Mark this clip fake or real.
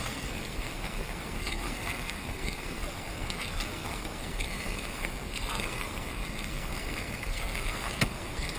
fake